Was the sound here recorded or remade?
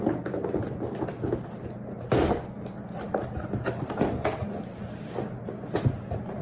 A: recorded